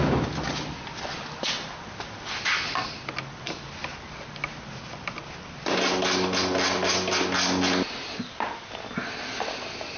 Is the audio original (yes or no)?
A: yes